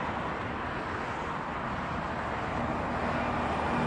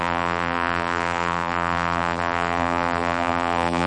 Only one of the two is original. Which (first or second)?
first